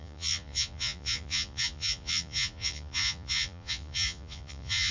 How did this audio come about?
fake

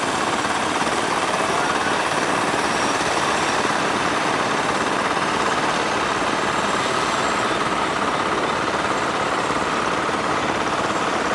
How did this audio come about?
fake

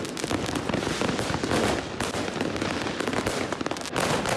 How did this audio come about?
real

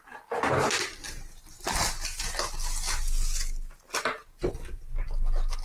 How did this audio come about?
real